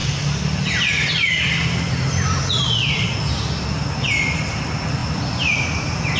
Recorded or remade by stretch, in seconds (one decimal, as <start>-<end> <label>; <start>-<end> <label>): 0.0-3.1 remade; 3.1-5.0 recorded; 5.0-5.6 remade; 5.6-6.2 recorded